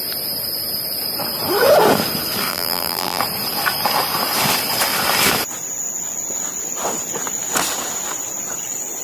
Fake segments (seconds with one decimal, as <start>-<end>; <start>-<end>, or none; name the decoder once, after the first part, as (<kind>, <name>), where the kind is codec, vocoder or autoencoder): 2.5-3.2 (vocoder, BigVGAN v2)